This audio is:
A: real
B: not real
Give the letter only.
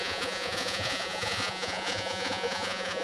B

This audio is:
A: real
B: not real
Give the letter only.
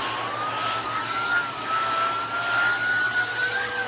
A